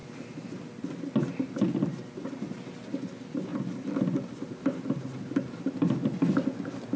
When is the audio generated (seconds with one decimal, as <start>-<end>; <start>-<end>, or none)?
none